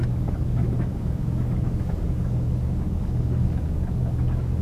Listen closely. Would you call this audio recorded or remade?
remade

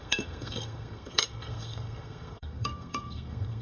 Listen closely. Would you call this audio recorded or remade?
remade